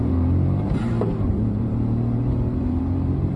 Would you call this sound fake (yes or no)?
yes